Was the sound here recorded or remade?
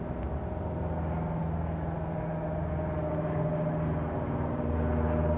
recorded